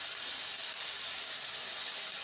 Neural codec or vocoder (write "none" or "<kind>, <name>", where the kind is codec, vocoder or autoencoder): none